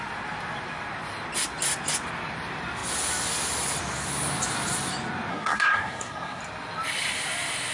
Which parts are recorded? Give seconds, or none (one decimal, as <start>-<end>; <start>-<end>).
0.0-5.3; 6.4-7.7